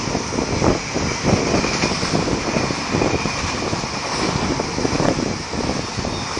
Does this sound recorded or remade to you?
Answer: recorded